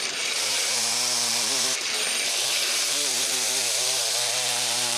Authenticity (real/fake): fake